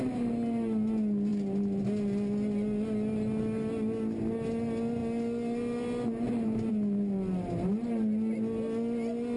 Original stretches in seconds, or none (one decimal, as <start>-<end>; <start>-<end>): 0.0-9.4